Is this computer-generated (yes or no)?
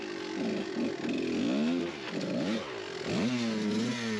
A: no